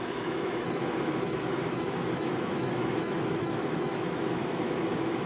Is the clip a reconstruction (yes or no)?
yes